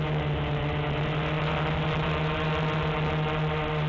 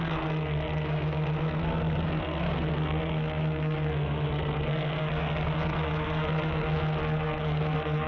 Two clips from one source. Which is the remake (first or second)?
second